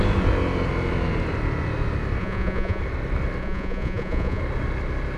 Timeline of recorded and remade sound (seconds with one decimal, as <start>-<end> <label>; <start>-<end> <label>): 0.0-2.2 recorded; 2.2-2.8 remade; 2.8-3.4 recorded; 3.4-4.4 remade; 4.4-5.2 recorded